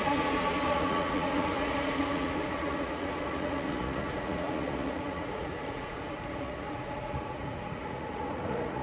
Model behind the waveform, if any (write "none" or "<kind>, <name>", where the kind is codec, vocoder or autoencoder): vocoder, Vocos